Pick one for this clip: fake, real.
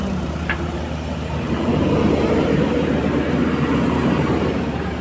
fake